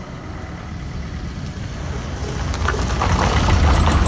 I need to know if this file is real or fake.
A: real